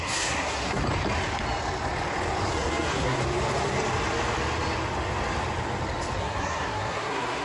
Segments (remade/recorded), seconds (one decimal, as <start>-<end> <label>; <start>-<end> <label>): 0.0-0.8 remade; 0.8-2.5 recorded; 2.5-3.2 remade; 3.2-6.2 recorded; 6.2-7.4 remade